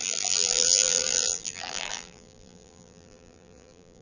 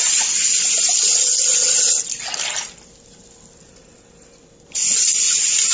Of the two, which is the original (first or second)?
second